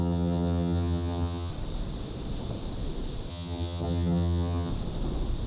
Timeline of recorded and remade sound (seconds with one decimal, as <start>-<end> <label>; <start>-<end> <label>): 0.0-1.5 remade; 1.5-3.3 recorded; 3.3-4.7 remade; 4.7-5.5 recorded

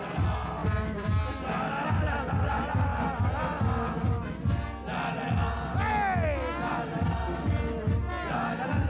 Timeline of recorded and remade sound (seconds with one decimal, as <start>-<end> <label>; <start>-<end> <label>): 0.0-8.9 recorded

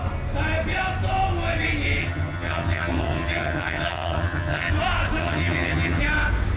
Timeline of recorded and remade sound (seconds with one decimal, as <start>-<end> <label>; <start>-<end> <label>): 0.0-2.0 recorded; 2.0-4.7 remade; 4.7-5.2 recorded; 5.2-6.0 remade; 6.0-6.6 recorded

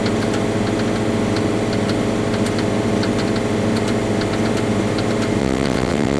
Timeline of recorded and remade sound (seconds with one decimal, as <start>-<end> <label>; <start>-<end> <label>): 0.0-5.4 recorded; 5.4-6.2 remade

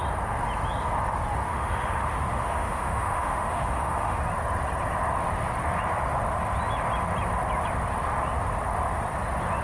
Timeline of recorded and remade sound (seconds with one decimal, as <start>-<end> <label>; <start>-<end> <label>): 0.0-1.5 recorded; 1.5-4.2 remade; 4.2-9.6 recorded